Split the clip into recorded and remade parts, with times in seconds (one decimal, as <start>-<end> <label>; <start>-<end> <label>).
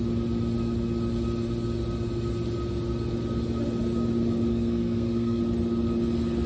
0.0-4.5 recorded; 4.5-5.4 remade; 5.4-6.5 recorded